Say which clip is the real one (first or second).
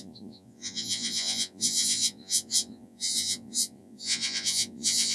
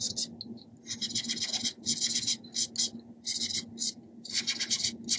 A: second